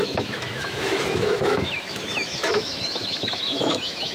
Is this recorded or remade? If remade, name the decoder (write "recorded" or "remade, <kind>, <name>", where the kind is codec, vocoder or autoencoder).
remade, autoencoder, DAC-VAE